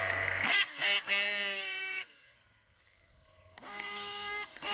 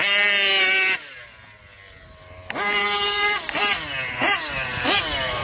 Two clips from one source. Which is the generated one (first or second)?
first